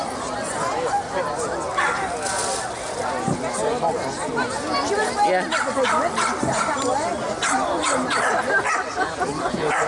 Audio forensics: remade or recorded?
recorded